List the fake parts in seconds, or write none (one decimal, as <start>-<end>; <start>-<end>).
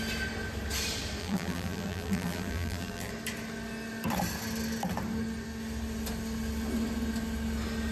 1.2-3.1